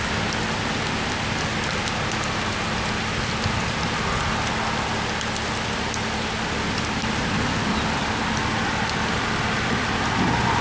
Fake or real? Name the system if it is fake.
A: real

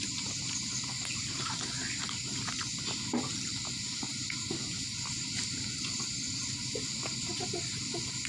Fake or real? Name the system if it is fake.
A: real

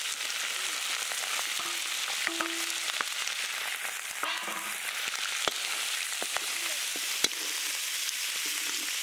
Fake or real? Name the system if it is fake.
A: real